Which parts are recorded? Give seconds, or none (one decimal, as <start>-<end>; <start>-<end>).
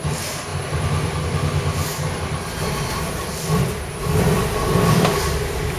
none